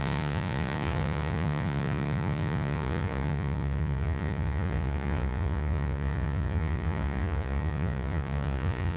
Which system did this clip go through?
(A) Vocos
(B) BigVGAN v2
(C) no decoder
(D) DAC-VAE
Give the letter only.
A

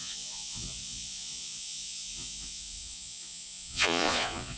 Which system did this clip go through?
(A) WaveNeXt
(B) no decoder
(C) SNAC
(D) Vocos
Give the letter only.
D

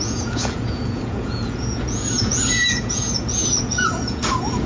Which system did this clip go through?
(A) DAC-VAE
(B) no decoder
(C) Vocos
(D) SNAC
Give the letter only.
C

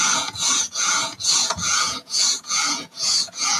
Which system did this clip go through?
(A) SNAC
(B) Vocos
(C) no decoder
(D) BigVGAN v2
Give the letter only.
B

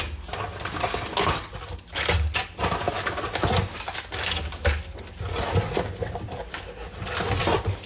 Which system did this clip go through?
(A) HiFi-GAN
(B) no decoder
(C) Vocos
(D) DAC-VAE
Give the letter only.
B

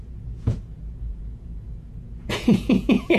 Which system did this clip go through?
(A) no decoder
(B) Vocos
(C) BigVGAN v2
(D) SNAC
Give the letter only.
B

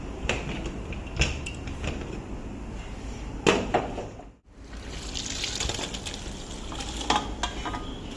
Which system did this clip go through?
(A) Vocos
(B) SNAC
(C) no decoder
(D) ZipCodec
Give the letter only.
C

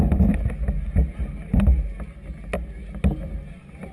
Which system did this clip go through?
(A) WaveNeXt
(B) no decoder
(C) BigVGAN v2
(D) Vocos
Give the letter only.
B